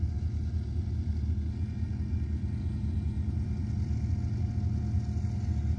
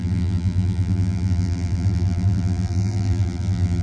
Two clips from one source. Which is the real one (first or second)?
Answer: first